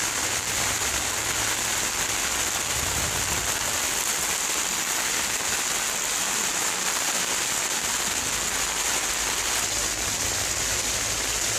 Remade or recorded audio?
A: recorded